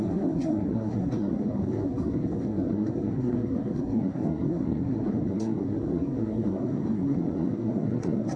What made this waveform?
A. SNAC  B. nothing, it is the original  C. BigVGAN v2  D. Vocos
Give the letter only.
A